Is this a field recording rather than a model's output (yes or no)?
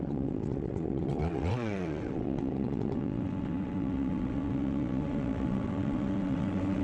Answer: no